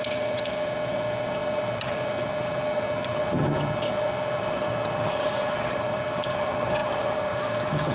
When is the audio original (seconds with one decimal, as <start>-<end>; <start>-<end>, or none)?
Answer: none